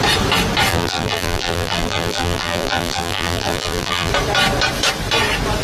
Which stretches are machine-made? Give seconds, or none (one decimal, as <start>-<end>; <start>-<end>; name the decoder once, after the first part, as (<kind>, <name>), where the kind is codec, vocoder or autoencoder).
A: 0.7-4.1 (vocoder, BigVGAN v2)